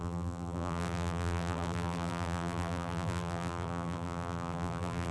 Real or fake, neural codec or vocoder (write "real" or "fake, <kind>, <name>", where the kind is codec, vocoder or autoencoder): fake, vocoder, BigVGAN v2